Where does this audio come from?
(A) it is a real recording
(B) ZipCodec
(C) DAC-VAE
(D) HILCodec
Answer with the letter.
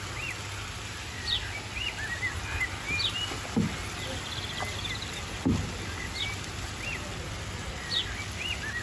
A